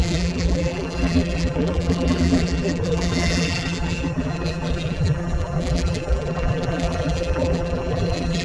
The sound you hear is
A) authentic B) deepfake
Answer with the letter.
B